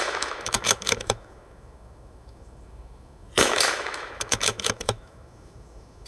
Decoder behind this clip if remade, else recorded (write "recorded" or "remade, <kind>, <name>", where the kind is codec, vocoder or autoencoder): remade, autoencoder, DAC-VAE